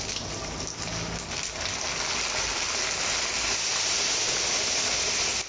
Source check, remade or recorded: recorded